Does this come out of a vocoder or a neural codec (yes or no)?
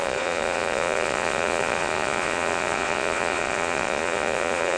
yes